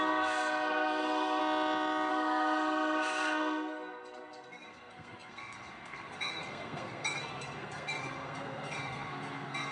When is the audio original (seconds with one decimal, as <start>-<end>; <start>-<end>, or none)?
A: 1.4-2.1